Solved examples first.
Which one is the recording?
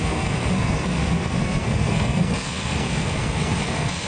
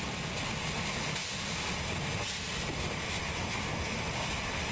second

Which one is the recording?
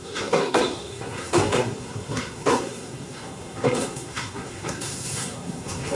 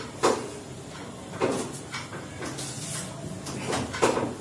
second